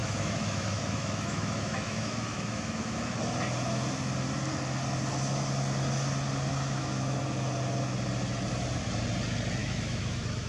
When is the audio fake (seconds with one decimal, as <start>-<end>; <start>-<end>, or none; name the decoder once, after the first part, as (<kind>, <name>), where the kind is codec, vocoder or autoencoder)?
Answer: 0.0-3.2 (autoencoder, DAC-VAE); 6.5-7.2; 9.6-10.5